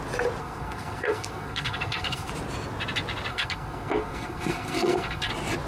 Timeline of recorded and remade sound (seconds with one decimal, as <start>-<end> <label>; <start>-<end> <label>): 0.0-0.4 recorded; 0.4-2.3 remade; 2.3-3.3 recorded; 3.3-5.3 remade; 5.3-5.7 recorded